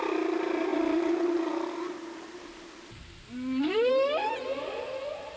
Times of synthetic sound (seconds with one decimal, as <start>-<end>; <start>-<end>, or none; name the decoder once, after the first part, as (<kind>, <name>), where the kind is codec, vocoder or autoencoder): none